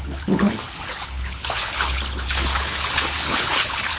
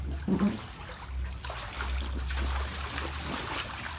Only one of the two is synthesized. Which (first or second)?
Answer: first